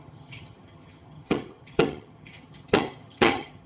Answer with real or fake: fake